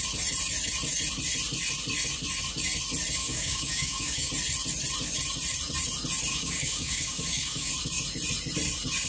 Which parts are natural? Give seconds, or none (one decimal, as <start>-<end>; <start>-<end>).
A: 0.0-3.2; 4.3-6.3; 7.7-9.1

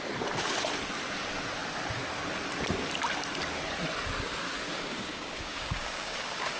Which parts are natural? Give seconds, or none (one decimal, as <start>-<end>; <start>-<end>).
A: 0.0-4.7

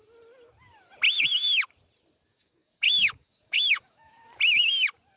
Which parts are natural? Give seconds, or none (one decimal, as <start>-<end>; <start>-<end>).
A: 0.0-2.3; 4.2-5.2